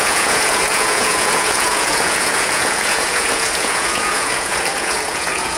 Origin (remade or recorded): remade